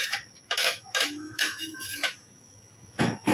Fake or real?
fake